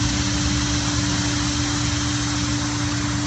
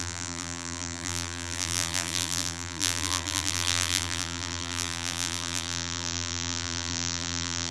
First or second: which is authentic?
first